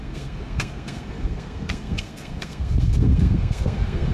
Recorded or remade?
remade